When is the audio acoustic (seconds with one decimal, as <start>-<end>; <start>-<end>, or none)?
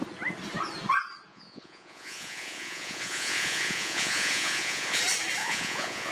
0.0-1.3; 5.0-5.4